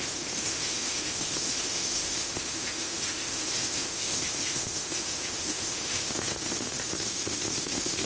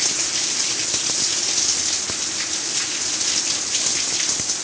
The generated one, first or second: first